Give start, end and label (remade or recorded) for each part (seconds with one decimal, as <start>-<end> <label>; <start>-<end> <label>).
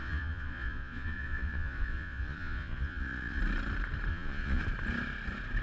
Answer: 0.0-3.4 remade; 3.4-4.1 recorded; 4.1-4.6 remade; 4.6-5.6 recorded